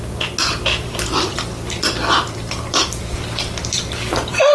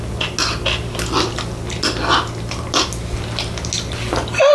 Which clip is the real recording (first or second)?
second